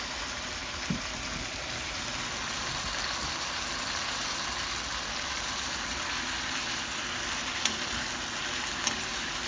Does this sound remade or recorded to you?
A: recorded